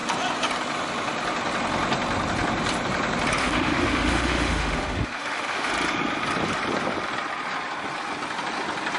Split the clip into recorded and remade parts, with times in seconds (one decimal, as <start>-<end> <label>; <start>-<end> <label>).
0.0-3.4 recorded; 3.4-5.7 remade; 5.7-9.0 recorded